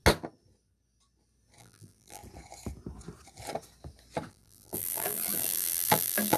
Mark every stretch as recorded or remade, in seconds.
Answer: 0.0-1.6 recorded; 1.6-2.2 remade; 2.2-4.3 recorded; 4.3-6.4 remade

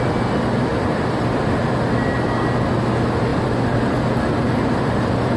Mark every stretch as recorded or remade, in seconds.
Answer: 0.0-0.7 recorded; 0.7-1.6 remade; 1.6-3.3 recorded; 3.3-5.4 remade

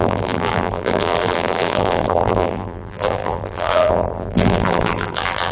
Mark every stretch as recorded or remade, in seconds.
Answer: 0.0-5.5 remade